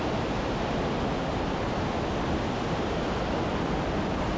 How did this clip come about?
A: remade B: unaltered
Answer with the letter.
B